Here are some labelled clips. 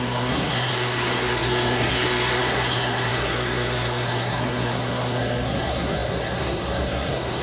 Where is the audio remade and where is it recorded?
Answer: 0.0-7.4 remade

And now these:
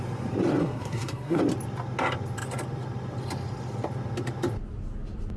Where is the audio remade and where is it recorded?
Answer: 0.0-0.6 recorded; 0.6-1.4 remade; 1.4-5.4 recorded

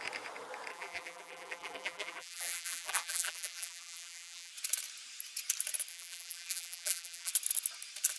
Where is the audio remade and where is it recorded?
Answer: 0.0-0.7 recorded; 0.7-4.5 remade; 4.5-5.9 recorded; 5.9-7.3 remade; 7.3-8.2 recorded

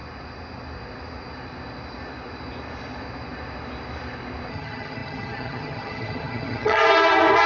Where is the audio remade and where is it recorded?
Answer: 0.0-4.5 recorded; 4.5-6.8 remade; 6.8-7.5 recorded